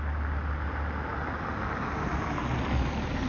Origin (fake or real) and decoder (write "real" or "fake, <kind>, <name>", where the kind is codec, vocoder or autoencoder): real